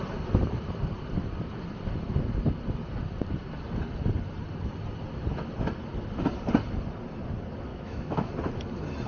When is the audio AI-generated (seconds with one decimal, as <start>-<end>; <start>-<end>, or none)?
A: 7.7-8.3